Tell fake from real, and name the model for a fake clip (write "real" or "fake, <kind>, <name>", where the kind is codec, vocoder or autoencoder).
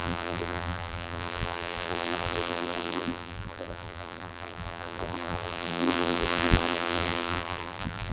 fake, vocoder, BigVGAN v2